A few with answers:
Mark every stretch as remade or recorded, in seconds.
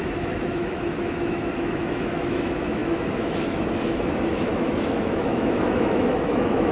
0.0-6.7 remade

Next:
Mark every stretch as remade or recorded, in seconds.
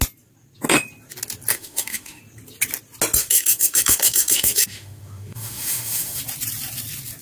0.0-1.5 recorded; 1.5-2.2 remade; 2.2-3.2 recorded; 3.2-6.2 remade; 6.2-7.2 recorded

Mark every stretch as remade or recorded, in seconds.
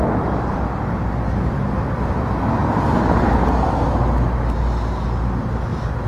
0.0-6.1 recorded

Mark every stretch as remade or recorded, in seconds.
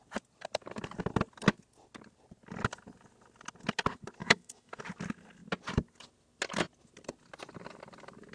0.0-4.2 recorded; 4.2-4.8 remade; 4.8-8.3 recorded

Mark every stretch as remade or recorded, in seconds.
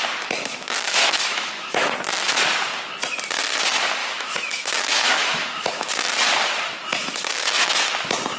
0.0-0.5 recorded; 0.5-1.9 remade; 1.9-4.0 recorded; 4.0-5.9 remade; 5.9-7.0 recorded; 7.0-7.9 remade; 7.9-8.4 recorded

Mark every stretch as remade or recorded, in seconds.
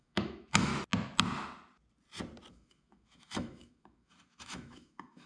0.0-0.7 remade; 0.7-2.5 recorded; 2.5-5.3 remade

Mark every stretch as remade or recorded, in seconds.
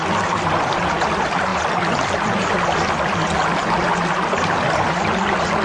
0.0-5.6 recorded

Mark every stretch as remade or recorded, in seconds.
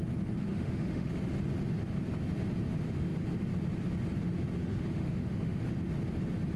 0.0-0.5 recorded; 0.5-1.1 remade; 1.1-4.6 recorded; 4.6-5.6 remade; 5.6-6.6 recorded